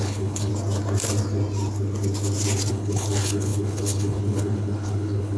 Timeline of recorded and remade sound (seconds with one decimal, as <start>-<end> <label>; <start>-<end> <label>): 0.0-0.5 remade; 0.5-2.7 recorded; 2.7-5.4 remade